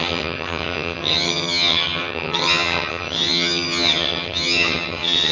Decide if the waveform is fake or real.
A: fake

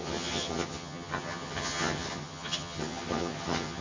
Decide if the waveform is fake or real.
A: fake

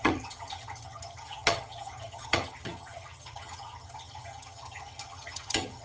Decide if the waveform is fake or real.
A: fake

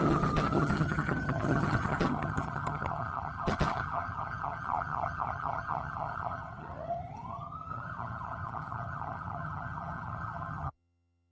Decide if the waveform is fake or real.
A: fake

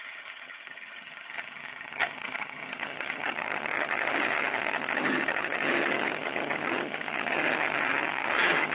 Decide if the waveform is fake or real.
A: fake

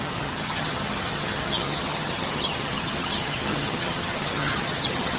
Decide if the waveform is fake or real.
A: fake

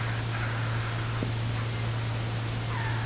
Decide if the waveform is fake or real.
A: real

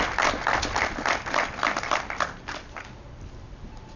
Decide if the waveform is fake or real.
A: real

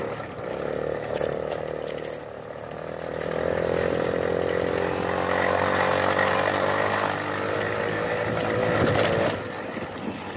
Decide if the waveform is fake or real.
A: real